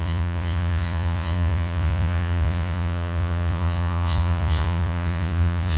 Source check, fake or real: fake